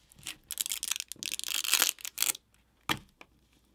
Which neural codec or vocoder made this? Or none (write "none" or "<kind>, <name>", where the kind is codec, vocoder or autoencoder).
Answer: none